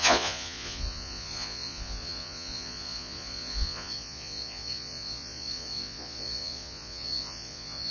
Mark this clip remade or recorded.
remade